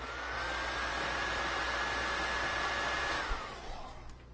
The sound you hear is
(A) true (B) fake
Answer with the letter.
A